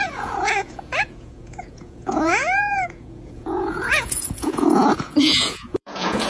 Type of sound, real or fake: fake